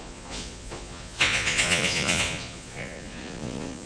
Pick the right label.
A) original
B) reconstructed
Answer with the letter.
B